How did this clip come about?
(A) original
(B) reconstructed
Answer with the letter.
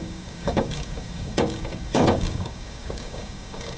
B